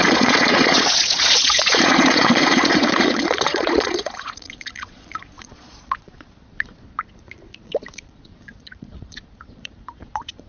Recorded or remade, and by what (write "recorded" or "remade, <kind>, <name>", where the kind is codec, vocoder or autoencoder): remade, vocoder, Vocos